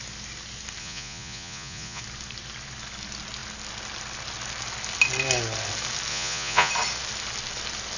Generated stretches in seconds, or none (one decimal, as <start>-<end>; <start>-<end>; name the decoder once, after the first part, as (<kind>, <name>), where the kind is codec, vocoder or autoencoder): 0.8-2.0 (vocoder, Vocos); 6.1-6.7